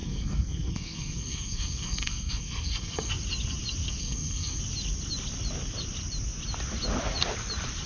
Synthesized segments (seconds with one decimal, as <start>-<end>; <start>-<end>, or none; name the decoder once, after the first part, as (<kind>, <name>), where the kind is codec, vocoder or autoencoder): 0.0-3.1 (codec, SNAC); 4.0-4.6